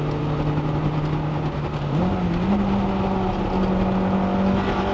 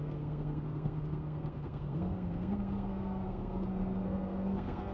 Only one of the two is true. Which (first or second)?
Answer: first